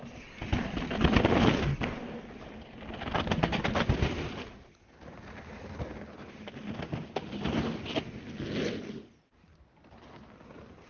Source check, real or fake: real